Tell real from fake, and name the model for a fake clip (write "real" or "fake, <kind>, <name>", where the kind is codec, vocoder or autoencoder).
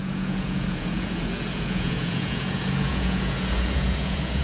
fake, vocoder, Vocos